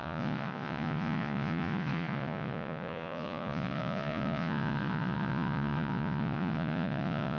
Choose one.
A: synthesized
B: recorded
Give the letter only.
A